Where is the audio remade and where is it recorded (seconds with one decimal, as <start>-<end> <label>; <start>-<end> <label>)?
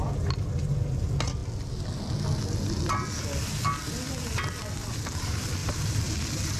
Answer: 0.0-5.6 recorded; 5.6-6.1 remade; 6.1-6.6 recorded